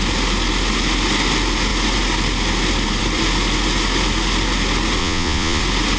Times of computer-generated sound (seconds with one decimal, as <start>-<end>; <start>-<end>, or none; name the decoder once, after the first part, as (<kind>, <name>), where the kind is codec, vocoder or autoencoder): 5.0-5.6 (vocoder, Vocos)